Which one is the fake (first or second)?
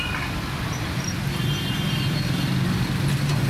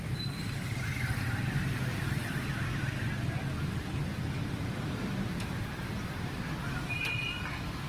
second